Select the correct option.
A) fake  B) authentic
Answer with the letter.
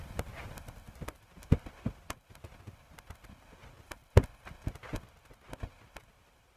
A